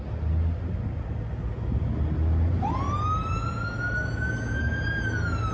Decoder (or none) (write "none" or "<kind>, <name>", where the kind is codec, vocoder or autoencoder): none